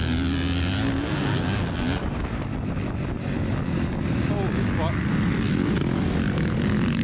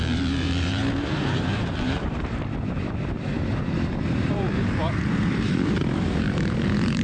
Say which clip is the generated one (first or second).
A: second